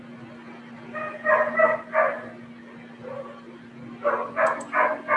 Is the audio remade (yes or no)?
no